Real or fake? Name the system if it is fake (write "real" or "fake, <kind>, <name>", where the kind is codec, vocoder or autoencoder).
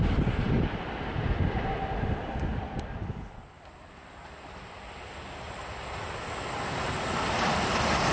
real